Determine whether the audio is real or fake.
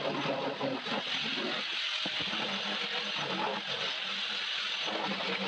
real